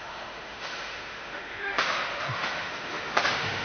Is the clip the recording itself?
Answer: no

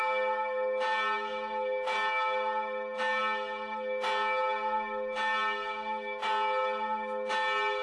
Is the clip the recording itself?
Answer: yes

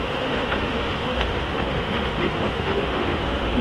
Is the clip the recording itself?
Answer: no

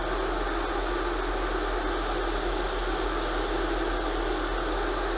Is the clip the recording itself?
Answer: yes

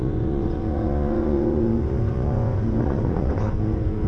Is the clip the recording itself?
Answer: no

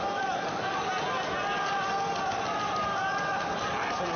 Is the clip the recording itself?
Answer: yes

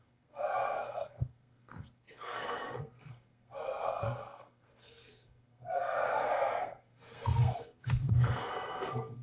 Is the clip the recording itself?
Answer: no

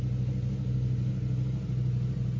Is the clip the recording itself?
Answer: yes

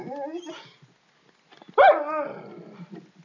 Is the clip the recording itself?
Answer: yes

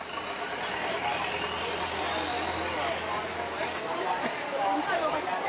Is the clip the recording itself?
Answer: yes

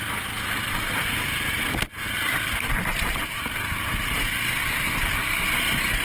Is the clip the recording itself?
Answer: yes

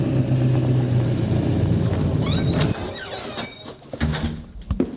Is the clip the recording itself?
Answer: yes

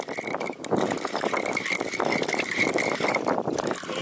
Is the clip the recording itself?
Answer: yes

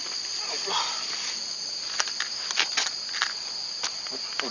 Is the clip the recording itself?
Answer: yes